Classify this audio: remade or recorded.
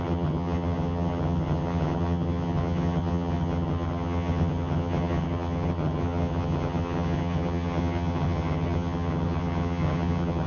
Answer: remade